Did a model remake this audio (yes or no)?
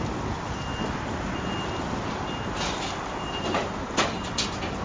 no